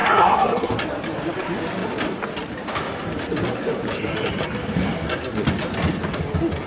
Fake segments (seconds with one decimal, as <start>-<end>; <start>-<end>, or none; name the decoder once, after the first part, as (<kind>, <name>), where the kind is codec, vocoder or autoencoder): 0.0-0.7 (codec, SNAC)